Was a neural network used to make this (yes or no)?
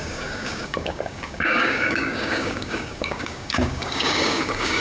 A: yes